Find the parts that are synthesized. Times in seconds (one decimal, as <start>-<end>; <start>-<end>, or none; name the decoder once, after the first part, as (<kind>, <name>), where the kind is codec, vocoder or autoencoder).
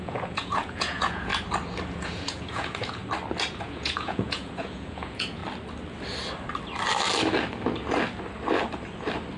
0.0-1.3 (vocoder, Vocos); 1.9-3.0; 3.6-5.4